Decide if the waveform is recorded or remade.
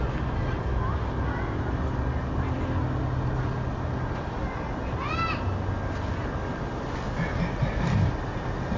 recorded